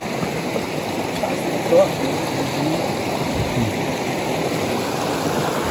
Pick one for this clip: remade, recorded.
recorded